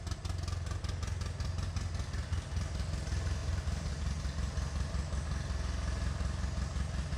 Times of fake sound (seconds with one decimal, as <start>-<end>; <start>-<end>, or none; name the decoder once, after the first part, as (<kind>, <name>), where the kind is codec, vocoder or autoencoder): 3.4-3.9 (vocoder, BigVGAN v2)

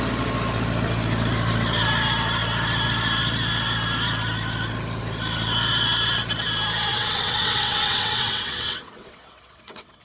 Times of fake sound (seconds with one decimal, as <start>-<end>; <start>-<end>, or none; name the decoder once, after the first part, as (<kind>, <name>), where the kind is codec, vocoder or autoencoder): 6.9-10.0 (vocoder, WaveNeXt)

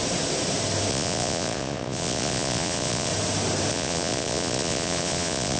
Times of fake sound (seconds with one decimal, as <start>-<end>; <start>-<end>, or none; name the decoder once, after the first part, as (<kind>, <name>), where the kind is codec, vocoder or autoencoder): 0.9-3.1 (vocoder, Vocos); 3.7-5.6

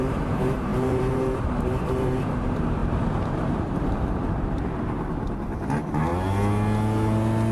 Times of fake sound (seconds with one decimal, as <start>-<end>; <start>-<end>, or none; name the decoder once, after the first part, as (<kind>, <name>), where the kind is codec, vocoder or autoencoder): 0.0-6.1 (vocoder, BigVGAN v2)

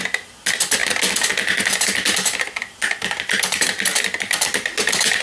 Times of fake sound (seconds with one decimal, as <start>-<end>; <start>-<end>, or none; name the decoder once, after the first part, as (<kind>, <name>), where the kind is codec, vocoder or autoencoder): none

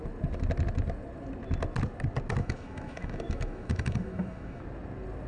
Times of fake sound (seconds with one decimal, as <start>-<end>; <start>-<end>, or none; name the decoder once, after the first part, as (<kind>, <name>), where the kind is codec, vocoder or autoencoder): 2.4-4.6 (autoencoder, DAC-VAE)

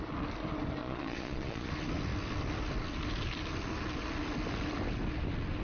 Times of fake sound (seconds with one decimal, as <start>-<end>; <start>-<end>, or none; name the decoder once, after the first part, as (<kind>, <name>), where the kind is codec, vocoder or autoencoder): 0.8-1.7 (vocoder, Vocos)